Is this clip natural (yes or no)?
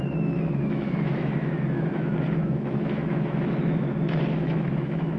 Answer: no